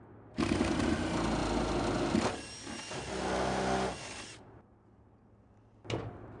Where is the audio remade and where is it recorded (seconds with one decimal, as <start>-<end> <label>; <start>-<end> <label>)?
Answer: 0.0-6.4 recorded